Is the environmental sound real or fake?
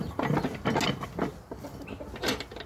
real